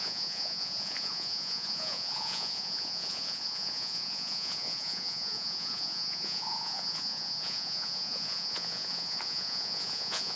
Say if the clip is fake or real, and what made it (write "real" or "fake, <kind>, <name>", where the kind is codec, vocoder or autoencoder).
fake, vocoder, Vocos